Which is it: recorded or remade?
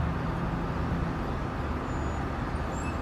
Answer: recorded